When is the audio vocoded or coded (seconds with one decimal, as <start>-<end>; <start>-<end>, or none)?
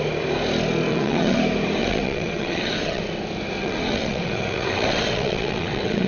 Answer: 0.9-1.4; 1.8-3.0; 3.6-6.1